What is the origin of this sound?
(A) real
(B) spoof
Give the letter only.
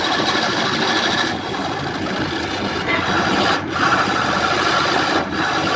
A